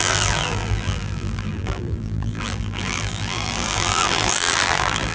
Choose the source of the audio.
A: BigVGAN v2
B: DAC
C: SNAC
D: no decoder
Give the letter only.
A